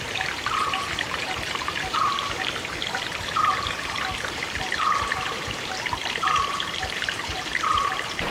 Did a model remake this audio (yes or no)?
yes